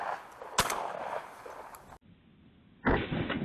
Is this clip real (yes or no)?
yes